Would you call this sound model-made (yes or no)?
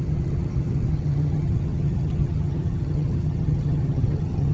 yes